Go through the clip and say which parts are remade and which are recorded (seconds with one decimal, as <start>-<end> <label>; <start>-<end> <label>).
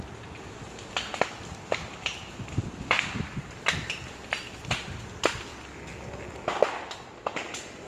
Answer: 0.0-7.9 recorded